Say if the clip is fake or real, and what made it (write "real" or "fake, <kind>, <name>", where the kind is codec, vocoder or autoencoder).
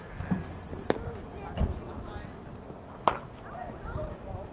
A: real